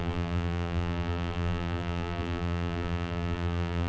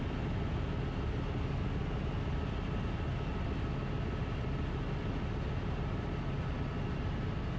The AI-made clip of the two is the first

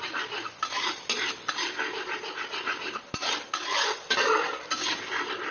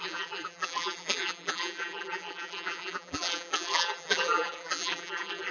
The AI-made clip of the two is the second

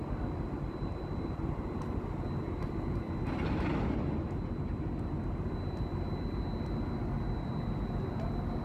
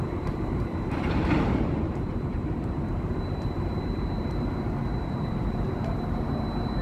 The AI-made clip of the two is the second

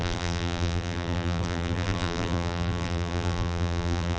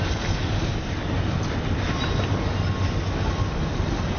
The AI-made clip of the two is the first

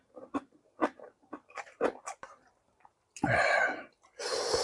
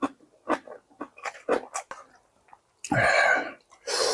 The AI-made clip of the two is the first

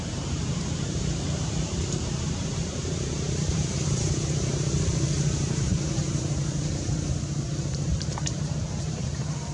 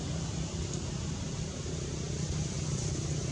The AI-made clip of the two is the first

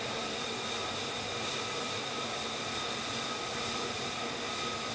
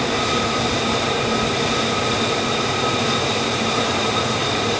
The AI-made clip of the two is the second